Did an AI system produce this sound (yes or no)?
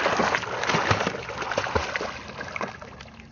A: no